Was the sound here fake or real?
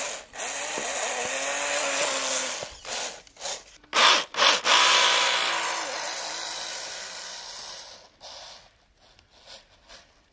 real